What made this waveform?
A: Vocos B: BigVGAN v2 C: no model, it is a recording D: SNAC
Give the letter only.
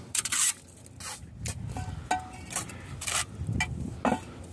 C